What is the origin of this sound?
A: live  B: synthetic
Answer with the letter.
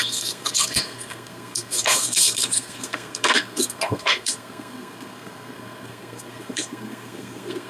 B